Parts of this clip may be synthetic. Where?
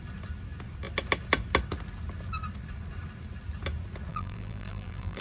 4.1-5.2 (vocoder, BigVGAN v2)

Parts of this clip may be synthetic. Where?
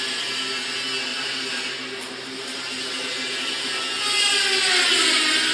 1.1-3.8 (vocoder, BigVGAN v2)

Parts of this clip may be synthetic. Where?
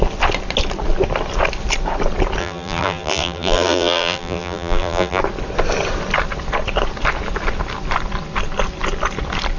2.4-5.2 (vocoder, BigVGAN v2)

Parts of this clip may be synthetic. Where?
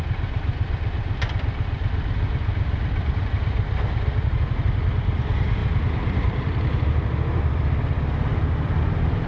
5.6-7.4 (vocoder, BigVGAN v2)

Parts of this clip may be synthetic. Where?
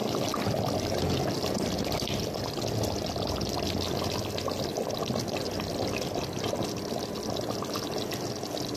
none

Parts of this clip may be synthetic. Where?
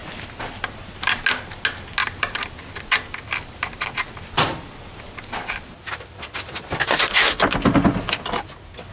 0.0-0.5 (vocoder, BigVGAN v2); 2.0-7.0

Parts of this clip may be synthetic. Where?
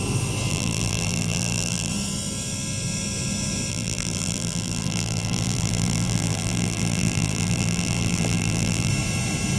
0.5-1.9 (vocoder, BigVGAN v2); 3.7-8.9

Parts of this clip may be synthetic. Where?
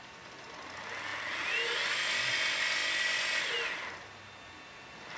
none